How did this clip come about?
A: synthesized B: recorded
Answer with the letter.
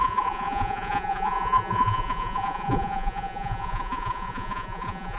A